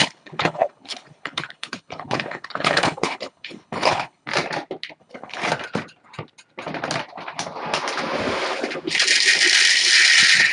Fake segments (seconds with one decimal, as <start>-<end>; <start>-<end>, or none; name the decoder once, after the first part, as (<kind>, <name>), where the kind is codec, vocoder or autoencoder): 0.0-4.3 (codec, HILCodec); 5.0-5.4